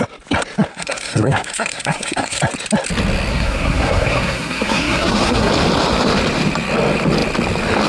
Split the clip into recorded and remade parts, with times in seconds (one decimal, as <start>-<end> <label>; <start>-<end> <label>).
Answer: 0.0-0.7 recorded; 0.7-2.4 remade; 2.4-3.3 recorded; 3.3-5.5 remade; 5.5-7.9 recorded